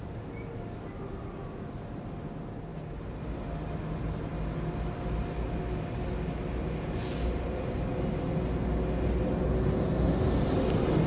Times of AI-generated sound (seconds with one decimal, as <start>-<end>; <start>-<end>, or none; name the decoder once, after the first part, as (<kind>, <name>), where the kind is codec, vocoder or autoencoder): none